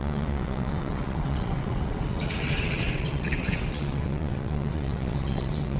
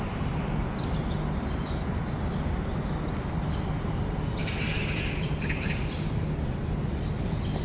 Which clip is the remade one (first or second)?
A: first